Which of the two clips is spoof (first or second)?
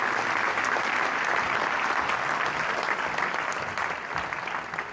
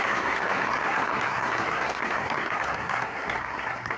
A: second